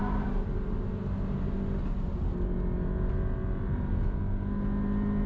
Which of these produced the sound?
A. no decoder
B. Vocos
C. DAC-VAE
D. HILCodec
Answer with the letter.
A